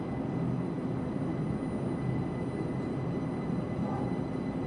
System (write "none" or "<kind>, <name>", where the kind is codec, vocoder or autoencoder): none